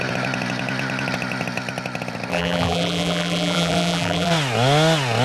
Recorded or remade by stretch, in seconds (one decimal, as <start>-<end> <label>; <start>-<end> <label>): 0.0-2.3 recorded; 2.3-4.3 remade; 4.3-5.2 recorded